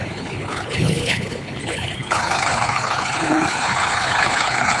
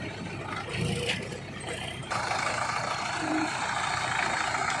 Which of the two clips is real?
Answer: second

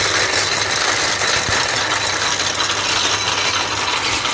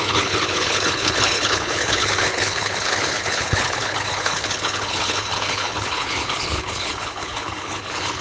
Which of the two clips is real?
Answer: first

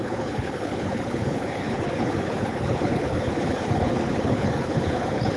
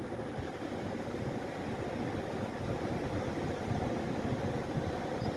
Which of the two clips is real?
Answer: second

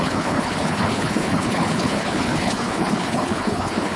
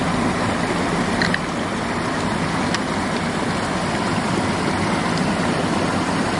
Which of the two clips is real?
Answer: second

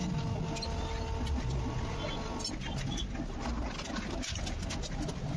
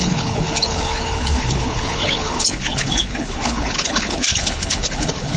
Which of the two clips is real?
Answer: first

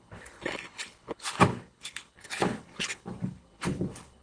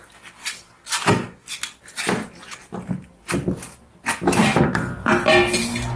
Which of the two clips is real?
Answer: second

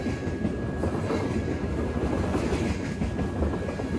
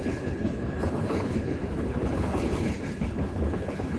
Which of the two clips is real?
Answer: first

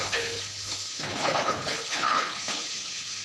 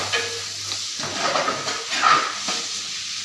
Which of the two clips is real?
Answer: second